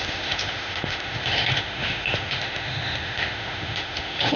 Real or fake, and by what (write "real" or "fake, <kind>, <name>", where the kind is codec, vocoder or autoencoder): fake, autoencoder, DAC-VAE